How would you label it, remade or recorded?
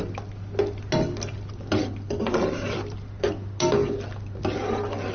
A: recorded